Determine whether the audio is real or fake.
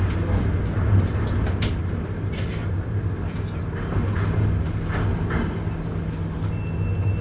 real